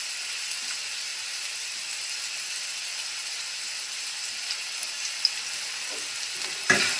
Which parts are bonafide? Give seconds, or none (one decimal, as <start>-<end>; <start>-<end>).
0.0-7.0